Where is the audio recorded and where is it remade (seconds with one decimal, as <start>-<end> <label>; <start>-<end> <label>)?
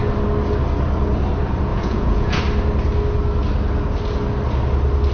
0.0-1.7 recorded; 1.7-2.4 remade; 2.4-5.1 recorded